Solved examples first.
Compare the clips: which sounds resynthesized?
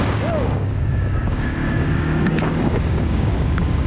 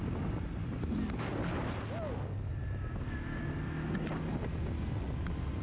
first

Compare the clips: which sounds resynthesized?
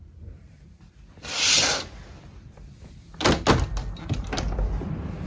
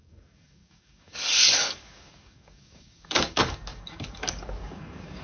second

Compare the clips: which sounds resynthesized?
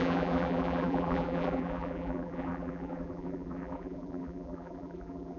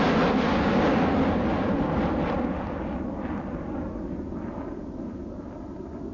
first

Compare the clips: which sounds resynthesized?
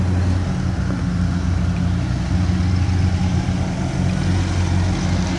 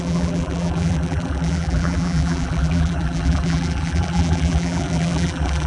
second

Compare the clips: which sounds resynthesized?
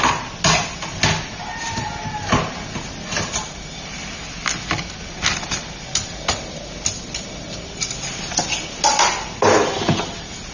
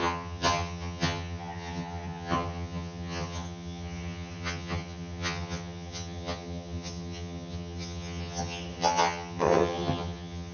second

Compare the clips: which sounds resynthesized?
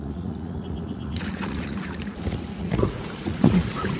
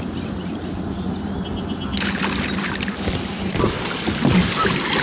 first